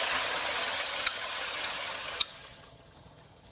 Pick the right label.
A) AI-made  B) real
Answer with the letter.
A